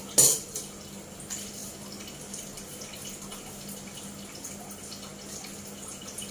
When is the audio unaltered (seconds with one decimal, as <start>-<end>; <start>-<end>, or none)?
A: 0.0-6.3